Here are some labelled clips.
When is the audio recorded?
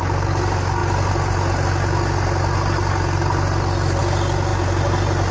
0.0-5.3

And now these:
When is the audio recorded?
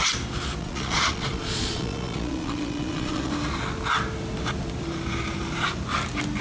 0.0-0.6; 3.3-6.4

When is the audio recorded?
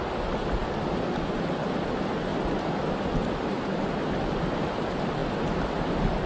0.6-1.3; 5.2-6.3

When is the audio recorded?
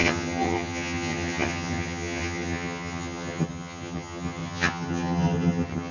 none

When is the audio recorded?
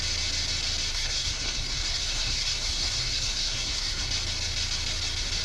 0.0-0.9; 4.1-5.4